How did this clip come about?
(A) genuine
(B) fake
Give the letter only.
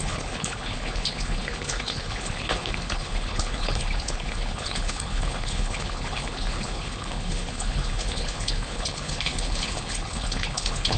B